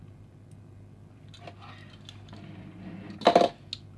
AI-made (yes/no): no